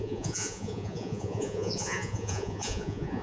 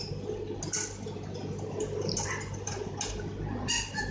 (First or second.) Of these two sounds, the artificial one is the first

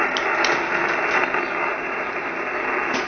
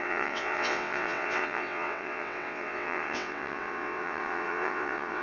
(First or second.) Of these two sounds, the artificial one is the second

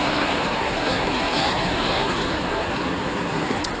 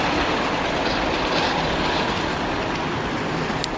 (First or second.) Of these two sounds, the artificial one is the first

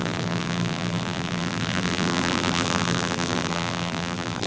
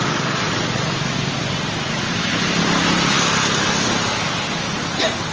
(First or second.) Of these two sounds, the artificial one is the first